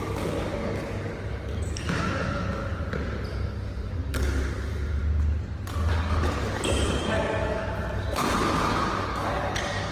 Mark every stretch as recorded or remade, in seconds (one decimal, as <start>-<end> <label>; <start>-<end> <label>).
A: 0.0-2.6 remade; 2.6-3.3 recorded; 3.3-5.0 remade; 5.0-5.9 recorded; 5.9-9.9 remade